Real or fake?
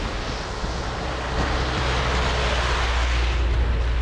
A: real